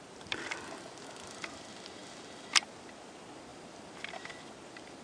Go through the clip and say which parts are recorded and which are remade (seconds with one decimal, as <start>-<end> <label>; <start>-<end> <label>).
0.0-5.0 recorded